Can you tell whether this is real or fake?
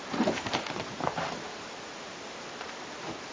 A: fake